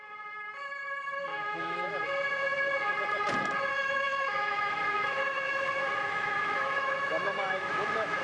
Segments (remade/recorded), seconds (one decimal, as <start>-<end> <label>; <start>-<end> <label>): 0.0-1.3 recorded; 1.3-1.9 remade; 1.9-3.7 recorded; 3.7-8.2 remade